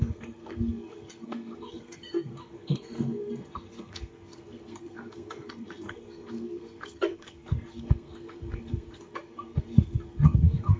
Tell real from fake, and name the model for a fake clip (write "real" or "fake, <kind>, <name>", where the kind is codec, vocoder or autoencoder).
fake, codec, SNAC